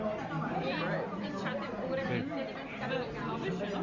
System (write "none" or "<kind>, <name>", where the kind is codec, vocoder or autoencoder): none